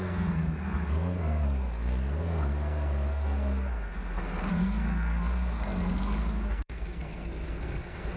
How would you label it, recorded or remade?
remade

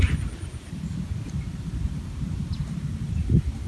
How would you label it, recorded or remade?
recorded